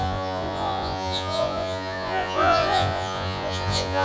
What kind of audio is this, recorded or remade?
remade